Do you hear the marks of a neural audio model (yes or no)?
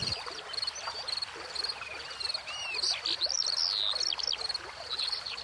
no